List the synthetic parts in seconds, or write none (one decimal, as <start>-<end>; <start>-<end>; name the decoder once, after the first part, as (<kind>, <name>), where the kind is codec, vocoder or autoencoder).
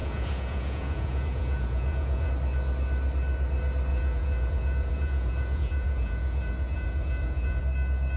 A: 0.0-2.3 (vocoder, Vocos); 3.9-7.6